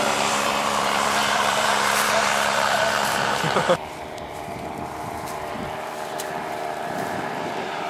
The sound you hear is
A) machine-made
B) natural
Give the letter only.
A